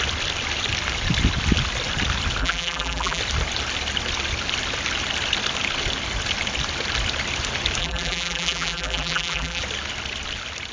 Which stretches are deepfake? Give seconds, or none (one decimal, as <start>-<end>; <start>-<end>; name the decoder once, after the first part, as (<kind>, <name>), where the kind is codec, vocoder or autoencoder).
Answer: 2.4-3.2 (vocoder, BigVGAN v2); 7.8-9.6